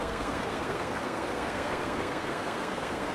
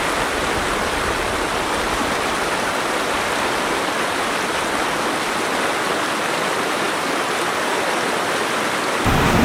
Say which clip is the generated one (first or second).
first